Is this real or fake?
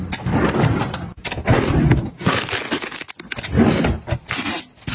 real